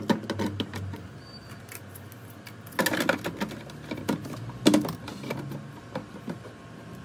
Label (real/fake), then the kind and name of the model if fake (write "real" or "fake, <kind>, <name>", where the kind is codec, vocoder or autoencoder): real